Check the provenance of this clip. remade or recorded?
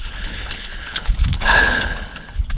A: remade